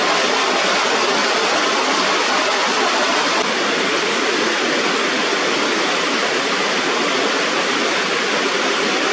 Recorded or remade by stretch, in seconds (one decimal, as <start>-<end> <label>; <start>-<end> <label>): 0.0-9.1 recorded